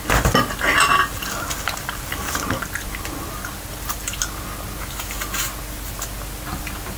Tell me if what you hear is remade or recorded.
recorded